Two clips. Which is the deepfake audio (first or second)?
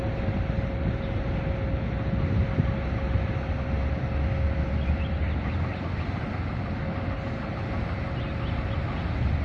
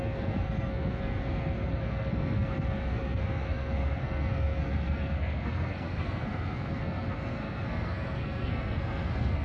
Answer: second